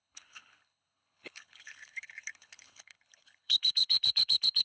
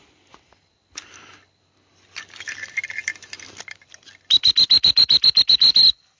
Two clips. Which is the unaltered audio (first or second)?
second